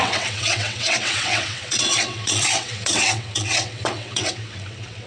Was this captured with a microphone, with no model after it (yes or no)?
no